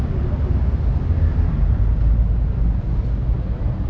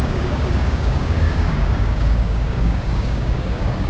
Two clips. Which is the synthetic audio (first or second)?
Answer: second